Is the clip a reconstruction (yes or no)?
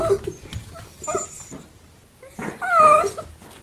no